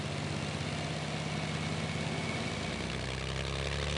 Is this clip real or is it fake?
real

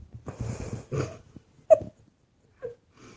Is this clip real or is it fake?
real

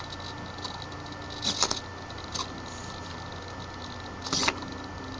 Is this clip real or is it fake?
real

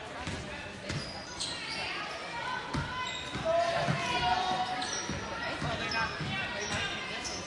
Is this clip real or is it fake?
real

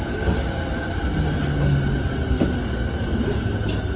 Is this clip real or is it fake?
real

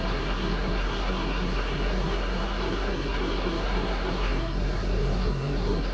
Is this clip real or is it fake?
fake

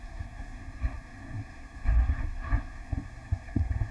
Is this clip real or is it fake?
fake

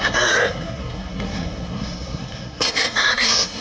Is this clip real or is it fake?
fake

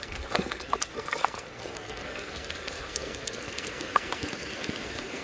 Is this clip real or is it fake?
fake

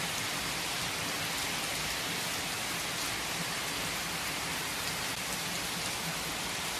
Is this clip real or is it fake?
real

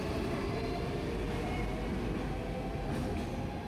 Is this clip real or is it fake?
real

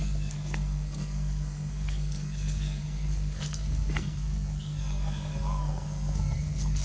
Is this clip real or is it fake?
fake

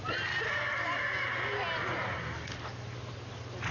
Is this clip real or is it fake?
real